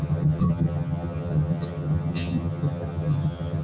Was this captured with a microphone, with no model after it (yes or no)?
no